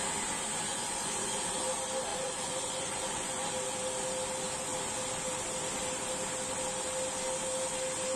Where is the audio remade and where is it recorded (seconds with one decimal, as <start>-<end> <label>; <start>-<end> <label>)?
0.0-0.7 recorded; 0.7-1.4 remade; 1.4-2.1 recorded; 2.1-3.5 remade; 3.5-8.2 recorded